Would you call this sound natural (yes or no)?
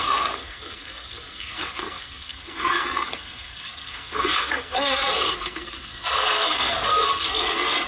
no